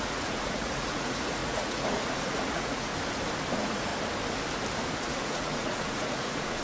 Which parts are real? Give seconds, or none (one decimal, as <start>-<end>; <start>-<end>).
2.9-3.5; 3.9-5.0